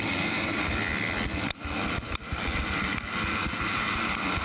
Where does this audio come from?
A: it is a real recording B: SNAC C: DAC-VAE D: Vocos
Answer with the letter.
A